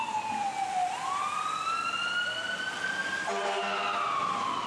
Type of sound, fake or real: real